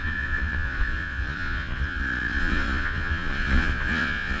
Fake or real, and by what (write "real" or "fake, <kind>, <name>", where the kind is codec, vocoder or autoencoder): fake, vocoder, Vocos